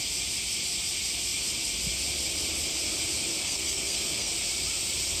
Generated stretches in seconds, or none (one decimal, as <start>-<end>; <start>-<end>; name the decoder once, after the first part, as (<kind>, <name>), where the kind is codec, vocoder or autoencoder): 3.4-4.3 (codec, SNAC)